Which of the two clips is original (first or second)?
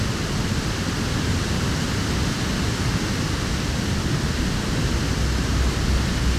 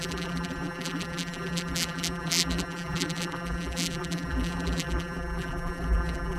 first